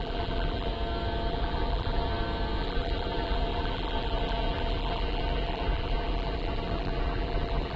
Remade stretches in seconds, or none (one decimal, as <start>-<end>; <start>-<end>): 0.0-0.7; 1.3-2.1; 2.6-7.8